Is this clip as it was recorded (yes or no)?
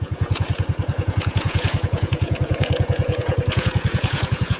no